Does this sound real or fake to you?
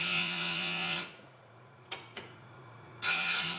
fake